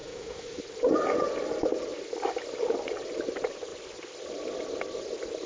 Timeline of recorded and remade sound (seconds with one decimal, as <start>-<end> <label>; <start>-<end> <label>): 0.0-0.6 remade; 0.6-5.5 recorded